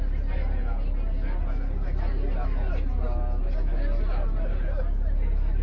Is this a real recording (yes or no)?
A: yes